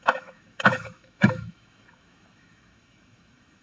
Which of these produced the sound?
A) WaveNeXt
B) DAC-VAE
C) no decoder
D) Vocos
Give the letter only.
B